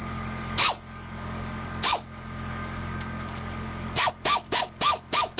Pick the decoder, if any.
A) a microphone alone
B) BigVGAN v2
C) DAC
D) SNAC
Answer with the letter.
C